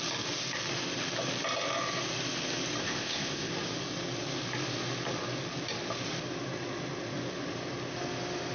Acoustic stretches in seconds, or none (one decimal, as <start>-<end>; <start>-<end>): 0.0-2.8; 3.5-8.5